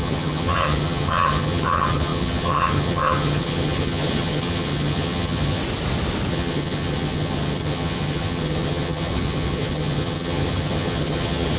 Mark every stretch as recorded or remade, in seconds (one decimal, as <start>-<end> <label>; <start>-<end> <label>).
0.0-5.6 remade; 5.6-6.3 recorded; 6.3-11.6 remade